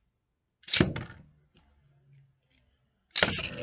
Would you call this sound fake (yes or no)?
no